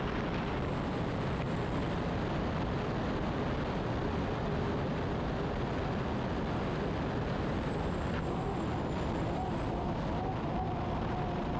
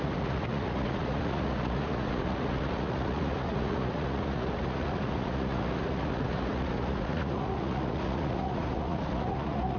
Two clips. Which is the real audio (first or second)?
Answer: first